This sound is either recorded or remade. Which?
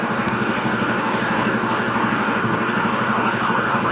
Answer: remade